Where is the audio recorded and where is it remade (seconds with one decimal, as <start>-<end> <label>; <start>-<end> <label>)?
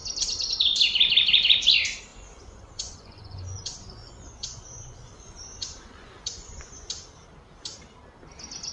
0.0-2.1 recorded; 2.1-6.9 remade; 6.9-8.7 recorded